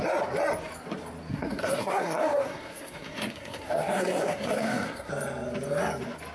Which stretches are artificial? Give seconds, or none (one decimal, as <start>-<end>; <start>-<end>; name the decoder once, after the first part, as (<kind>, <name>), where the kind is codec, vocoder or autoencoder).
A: 1.3-5.1 (codec, SNAC)